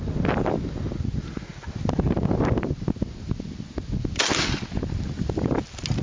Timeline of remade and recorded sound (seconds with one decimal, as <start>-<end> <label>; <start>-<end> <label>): 0.0-6.0 recorded